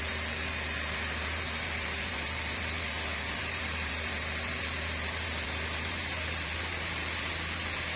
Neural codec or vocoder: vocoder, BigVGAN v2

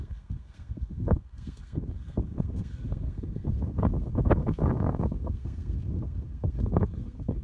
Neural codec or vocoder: codec, SNAC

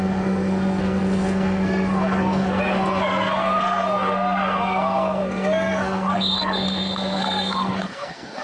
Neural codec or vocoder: codec, SNAC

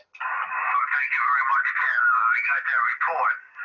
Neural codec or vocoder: none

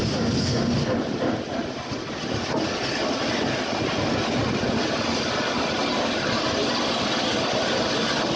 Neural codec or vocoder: none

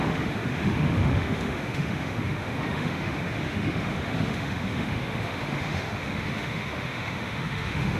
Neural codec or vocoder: autoencoder, DAC-VAE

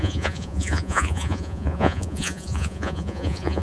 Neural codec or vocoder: vocoder, Vocos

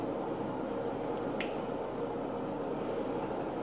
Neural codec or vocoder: none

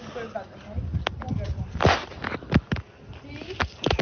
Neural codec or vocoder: none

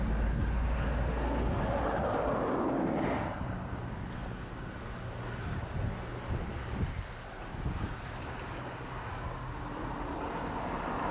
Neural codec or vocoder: none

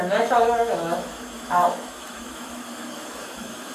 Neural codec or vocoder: autoencoder, DAC-VAE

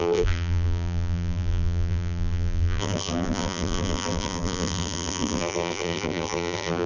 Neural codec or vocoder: vocoder, BigVGAN v2